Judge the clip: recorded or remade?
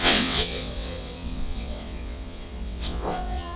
remade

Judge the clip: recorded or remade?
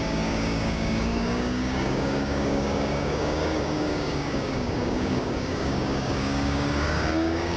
remade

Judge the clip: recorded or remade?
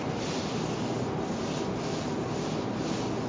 recorded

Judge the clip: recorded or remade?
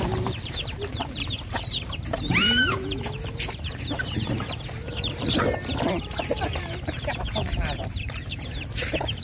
remade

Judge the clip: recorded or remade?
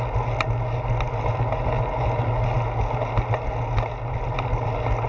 recorded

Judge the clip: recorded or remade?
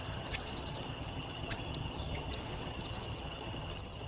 remade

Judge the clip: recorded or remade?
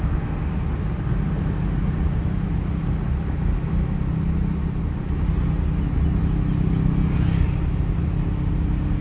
recorded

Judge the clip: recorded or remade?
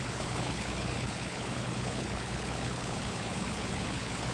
remade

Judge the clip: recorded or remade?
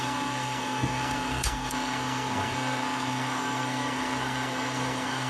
remade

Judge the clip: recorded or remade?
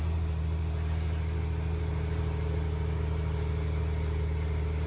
recorded